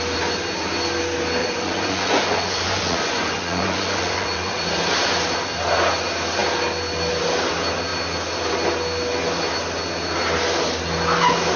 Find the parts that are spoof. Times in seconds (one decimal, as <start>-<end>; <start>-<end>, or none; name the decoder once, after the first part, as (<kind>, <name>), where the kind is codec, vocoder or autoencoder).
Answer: 1.4-4.6 (vocoder, Vocos)

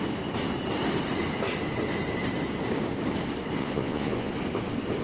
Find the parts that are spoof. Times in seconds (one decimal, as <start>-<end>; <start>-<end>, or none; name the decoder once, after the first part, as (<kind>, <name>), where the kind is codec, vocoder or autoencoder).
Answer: 3.6-4.3 (vocoder, Vocos)